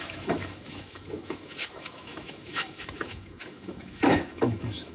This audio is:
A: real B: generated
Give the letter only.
B